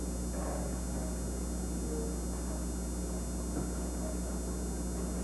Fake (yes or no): no